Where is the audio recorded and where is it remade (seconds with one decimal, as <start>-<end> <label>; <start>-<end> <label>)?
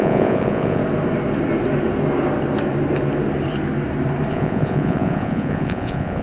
0.0-0.8 remade; 0.8-4.3 recorded; 4.3-6.2 remade